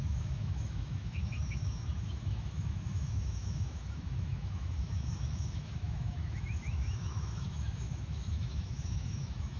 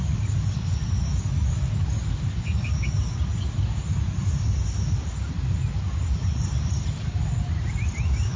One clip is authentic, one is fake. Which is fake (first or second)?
first